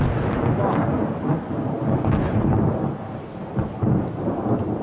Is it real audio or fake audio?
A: real